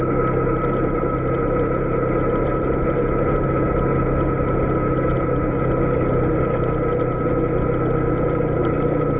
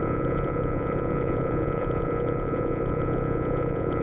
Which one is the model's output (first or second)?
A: second